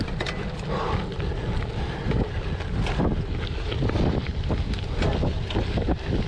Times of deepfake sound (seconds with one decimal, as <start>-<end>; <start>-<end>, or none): 1.7-3.0